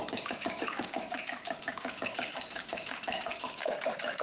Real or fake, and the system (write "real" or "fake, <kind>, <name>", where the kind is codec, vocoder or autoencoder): fake, codec, DAC